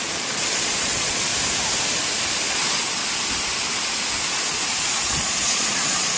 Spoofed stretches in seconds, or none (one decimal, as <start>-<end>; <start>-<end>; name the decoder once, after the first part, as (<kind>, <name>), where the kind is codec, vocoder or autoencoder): 0.0-1.3 (vocoder, Vocos); 2.5-3.0; 4.2-6.2